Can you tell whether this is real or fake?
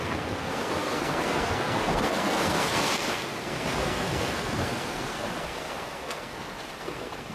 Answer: fake